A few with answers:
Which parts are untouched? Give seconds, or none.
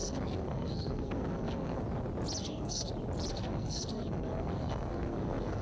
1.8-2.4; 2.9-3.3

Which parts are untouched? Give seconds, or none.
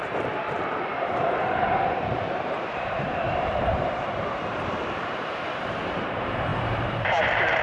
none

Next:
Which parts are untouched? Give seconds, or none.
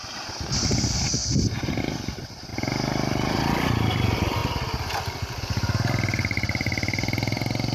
0.0-7.7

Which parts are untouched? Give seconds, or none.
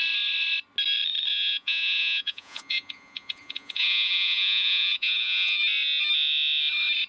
0.0-1.3; 5.6-7.1